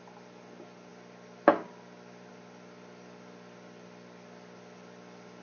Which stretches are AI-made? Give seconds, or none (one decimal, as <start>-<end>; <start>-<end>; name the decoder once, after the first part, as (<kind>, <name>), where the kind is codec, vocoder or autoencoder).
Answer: none